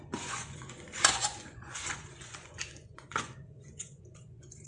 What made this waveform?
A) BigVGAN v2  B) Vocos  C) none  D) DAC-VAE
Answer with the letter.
B